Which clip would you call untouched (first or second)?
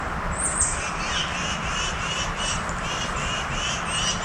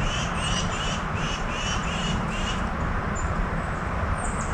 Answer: first